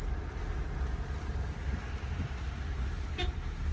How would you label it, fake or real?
real